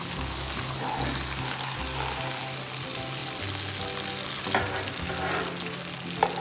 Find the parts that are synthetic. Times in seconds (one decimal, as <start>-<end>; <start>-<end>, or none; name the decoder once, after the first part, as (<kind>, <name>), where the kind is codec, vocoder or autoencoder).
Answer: none